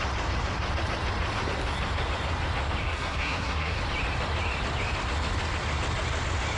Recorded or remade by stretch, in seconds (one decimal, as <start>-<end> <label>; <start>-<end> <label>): 0.0-2.8 recorded; 2.8-3.8 remade; 3.8-6.6 recorded